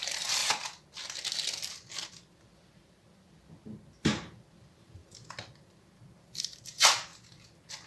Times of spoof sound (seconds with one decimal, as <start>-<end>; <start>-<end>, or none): 0.0-0.4; 4.6-5.0; 6.4-7.1